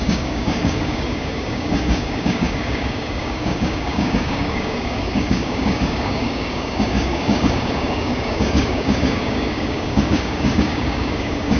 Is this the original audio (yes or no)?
no